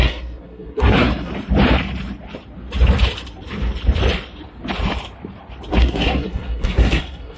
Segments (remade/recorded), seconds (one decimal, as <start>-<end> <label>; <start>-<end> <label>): 0.0-1.3 remade; 1.3-5.7 recorded; 5.7-7.4 remade